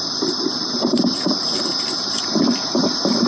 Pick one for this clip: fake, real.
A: real